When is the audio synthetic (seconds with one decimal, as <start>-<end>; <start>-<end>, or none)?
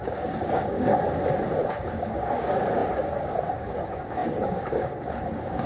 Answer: 0.0-0.9; 1.7-5.7